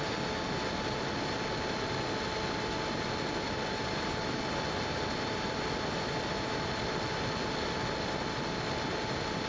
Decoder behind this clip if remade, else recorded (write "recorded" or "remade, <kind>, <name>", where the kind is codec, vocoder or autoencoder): recorded